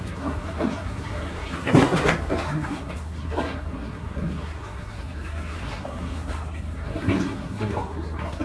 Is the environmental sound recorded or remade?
remade